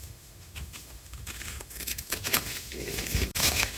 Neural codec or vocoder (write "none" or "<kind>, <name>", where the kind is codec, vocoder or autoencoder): autoencoder, DAC-VAE